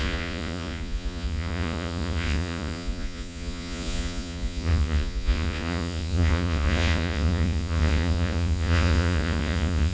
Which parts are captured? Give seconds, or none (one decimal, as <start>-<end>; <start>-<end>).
none